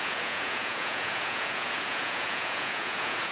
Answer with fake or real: fake